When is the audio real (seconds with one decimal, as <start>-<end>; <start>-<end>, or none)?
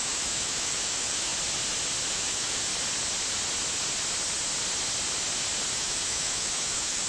1.3-2.1; 2.7-5.7